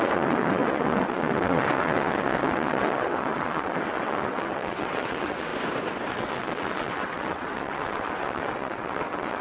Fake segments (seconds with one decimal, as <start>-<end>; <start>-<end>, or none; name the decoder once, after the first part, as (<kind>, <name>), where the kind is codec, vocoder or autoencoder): 0.0-5.5 (vocoder, WaveNeXt); 6.1-9.4